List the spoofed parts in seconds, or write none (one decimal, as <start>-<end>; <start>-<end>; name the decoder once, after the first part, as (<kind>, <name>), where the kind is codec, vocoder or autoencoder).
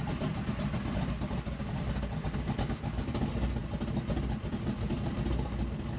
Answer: none